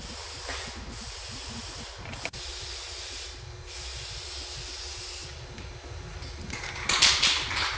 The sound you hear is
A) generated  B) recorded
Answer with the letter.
B